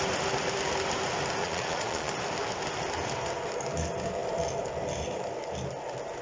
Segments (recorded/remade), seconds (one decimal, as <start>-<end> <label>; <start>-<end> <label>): 0.0-1.4 recorded; 1.4-2.1 remade; 2.1-6.2 recorded